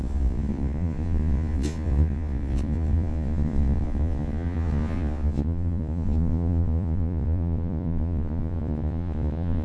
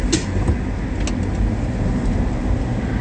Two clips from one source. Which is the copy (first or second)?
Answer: first